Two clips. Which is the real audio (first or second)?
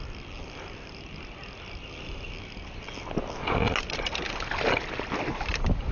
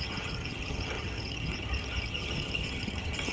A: first